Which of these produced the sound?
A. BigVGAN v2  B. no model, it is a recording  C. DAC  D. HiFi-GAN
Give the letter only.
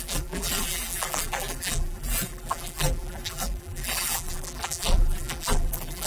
A